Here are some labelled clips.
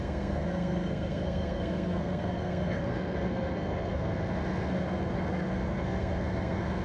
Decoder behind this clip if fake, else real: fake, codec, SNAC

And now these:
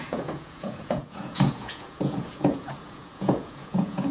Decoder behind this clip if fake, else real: fake, vocoder, Vocos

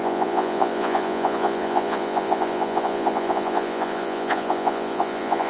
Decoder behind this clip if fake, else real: fake, vocoder, Vocos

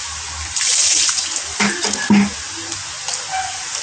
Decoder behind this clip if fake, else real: real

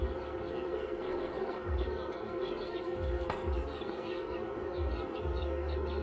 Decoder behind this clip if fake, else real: fake, codec, SNAC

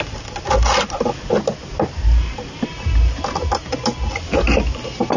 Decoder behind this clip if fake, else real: real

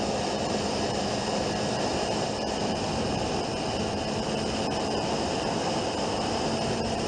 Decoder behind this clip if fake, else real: fake, vocoder, BigVGAN v2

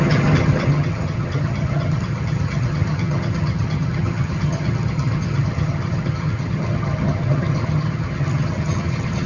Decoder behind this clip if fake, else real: fake, vocoder, HiFi-GAN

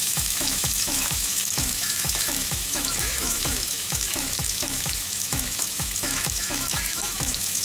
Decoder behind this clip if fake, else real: fake, autoencoder, DAC-VAE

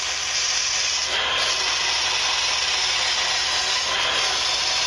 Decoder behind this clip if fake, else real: real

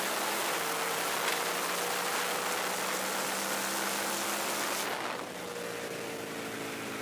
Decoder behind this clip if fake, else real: real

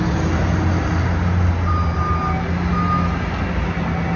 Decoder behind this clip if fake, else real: real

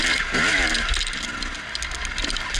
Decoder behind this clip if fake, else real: real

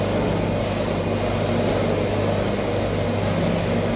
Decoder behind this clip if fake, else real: real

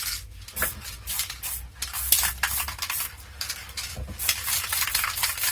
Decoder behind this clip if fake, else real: real